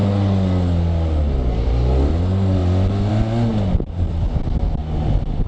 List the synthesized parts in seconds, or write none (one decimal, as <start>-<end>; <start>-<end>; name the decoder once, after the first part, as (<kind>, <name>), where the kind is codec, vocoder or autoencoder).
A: none